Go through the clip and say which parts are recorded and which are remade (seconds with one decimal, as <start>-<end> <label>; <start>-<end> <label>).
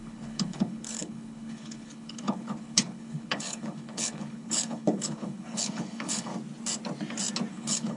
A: 0.0-6.3 remade; 6.3-7.5 recorded; 7.5-8.0 remade